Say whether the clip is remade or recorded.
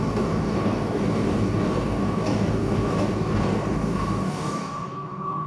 remade